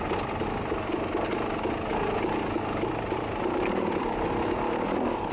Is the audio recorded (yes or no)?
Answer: yes